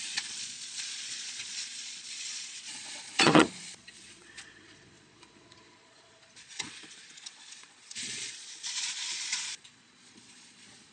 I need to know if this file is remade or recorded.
remade